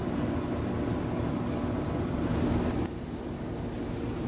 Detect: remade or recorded recorded